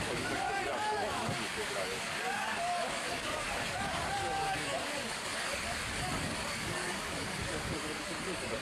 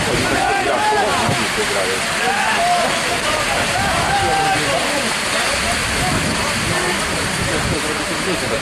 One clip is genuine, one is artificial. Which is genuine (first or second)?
second